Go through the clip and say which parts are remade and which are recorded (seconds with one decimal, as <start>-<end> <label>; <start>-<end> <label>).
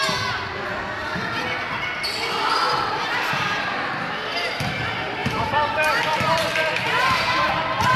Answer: 0.0-2.6 recorded; 2.6-3.6 remade; 3.6-5.2 recorded; 5.2-7.5 remade; 7.5-8.0 recorded